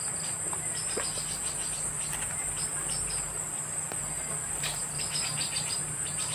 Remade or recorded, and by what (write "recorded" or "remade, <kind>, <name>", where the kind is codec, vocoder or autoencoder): remade, vocoder, BigVGAN v2